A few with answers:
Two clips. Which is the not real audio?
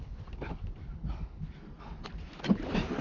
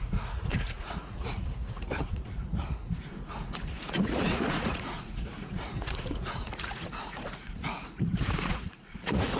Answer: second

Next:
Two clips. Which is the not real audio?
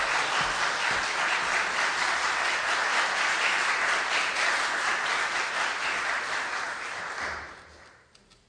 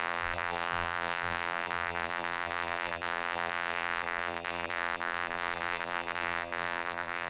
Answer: second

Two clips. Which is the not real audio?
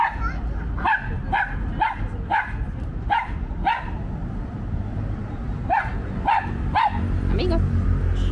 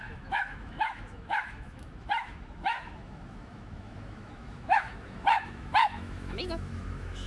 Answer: second